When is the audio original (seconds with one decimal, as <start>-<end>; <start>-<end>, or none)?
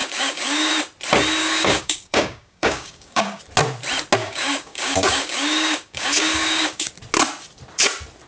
0.7-1.4; 3.4-4.2; 6.9-8.3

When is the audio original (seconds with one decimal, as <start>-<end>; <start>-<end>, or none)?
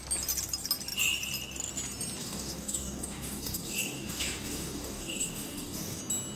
0.0-2.2; 6.0-6.4